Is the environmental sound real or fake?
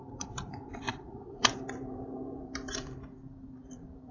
fake